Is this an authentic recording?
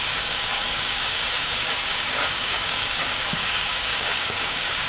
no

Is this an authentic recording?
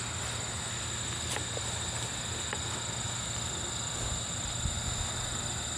yes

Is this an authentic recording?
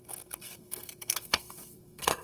no